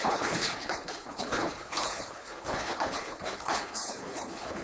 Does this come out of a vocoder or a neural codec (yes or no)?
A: yes